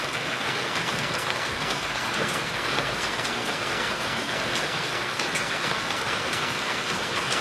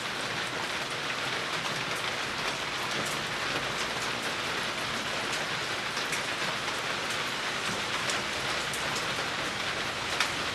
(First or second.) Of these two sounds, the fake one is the first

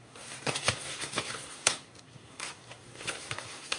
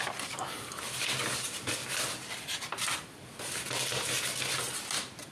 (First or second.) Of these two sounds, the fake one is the first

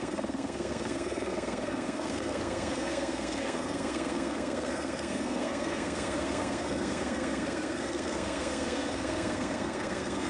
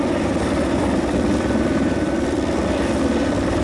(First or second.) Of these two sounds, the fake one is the first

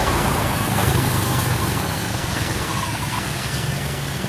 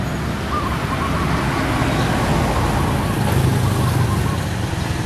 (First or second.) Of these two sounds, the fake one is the first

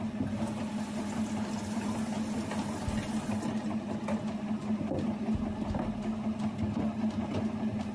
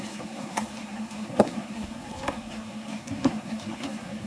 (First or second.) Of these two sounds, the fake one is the second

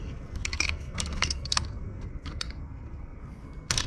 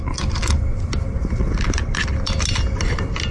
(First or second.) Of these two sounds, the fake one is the first